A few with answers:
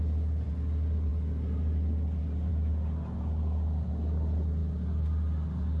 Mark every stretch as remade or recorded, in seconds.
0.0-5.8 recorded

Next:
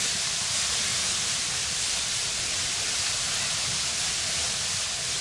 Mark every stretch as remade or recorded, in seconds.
0.0-0.9 recorded; 0.9-3.1 remade; 3.1-5.2 recorded

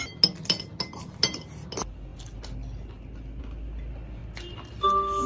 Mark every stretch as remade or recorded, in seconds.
0.0-5.3 recorded

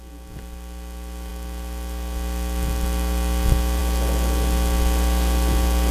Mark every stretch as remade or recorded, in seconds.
0.0-5.9 recorded

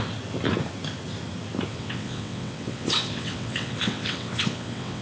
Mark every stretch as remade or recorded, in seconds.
0.0-1.7 recorded; 1.7-5.0 remade

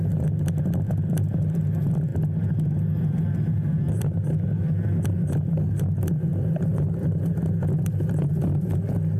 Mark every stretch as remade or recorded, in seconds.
0.0-9.2 recorded

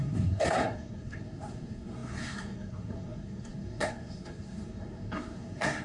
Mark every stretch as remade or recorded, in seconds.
0.0-5.8 remade

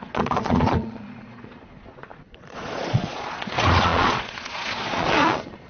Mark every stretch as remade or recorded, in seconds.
0.0-5.7 remade